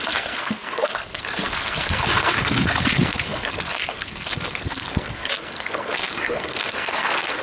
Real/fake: fake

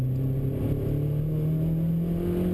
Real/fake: real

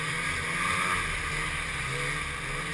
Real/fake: real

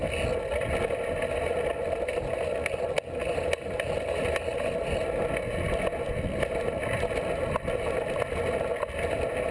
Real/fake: real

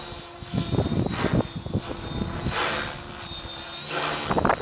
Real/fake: real